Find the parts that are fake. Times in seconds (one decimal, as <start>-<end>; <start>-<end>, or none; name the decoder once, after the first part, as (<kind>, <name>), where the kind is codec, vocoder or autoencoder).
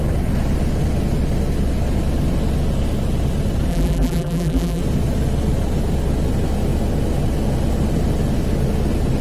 3.7-4.8 (vocoder, BigVGAN v2)